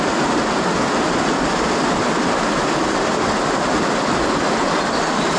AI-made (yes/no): no